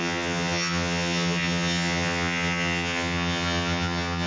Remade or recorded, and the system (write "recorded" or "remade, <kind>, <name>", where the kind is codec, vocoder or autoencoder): remade, vocoder, HiFi-GAN